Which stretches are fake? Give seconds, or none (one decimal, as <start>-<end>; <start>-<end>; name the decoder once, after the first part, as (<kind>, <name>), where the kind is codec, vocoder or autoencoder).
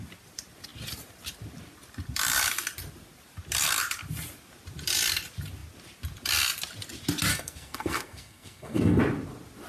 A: 7.3-9.0 (codec, SNAC)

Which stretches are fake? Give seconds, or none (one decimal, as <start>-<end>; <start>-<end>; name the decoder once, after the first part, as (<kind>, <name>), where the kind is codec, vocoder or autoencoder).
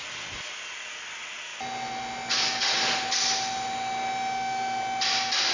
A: none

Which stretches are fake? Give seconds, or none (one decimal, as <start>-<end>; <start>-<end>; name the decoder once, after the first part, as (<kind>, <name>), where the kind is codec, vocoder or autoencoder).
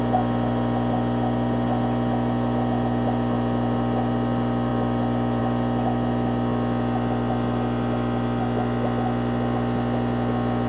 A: none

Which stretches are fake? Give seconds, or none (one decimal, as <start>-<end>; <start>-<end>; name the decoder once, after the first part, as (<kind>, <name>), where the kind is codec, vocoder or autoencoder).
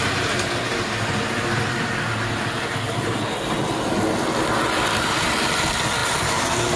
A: none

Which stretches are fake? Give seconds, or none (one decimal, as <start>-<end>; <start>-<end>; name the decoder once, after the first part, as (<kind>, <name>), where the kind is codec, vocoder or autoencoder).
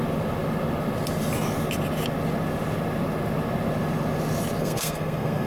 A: 4.6-5.5 (codec, SNAC)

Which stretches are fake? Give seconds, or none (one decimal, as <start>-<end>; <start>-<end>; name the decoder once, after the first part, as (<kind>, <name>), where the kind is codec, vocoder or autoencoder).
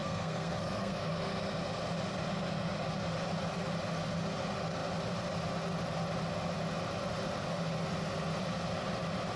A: 0.0-1.1 (codec, SNAC)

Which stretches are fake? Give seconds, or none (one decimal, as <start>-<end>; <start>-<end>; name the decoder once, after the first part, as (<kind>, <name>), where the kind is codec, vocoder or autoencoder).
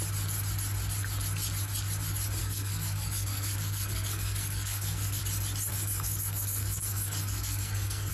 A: 2.4-5.2 (codec, SNAC); 5.7-8.1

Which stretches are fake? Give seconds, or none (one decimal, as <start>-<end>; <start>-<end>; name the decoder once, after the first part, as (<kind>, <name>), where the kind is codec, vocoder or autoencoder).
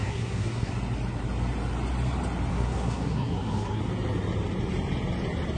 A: 0.0-0.7 (codec, SNAC); 2.5-3.8